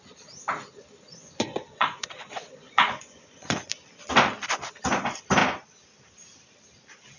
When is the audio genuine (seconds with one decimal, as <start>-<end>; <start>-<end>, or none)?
0.0-1.2; 3.7-7.2